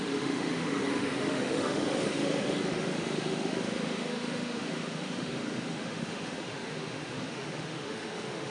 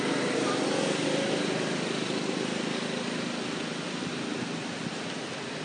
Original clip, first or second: second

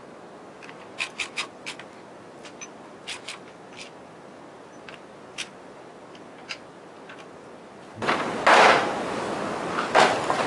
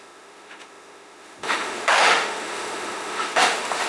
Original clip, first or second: first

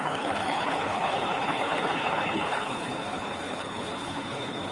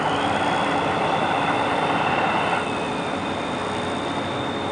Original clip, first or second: second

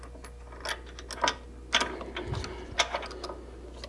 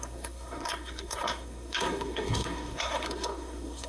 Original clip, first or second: first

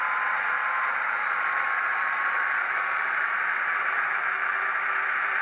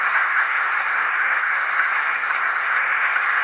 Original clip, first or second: first